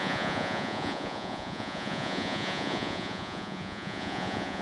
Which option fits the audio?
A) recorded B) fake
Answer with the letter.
B